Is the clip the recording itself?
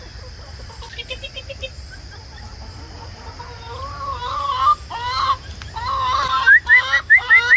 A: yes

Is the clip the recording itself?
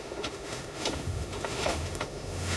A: no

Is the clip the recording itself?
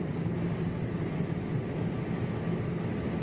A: yes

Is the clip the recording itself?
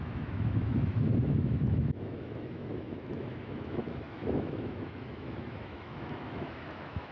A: no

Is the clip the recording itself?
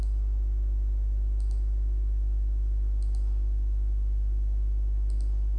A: yes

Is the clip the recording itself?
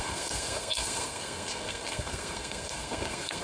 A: no